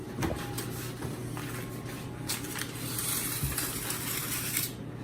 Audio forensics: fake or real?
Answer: real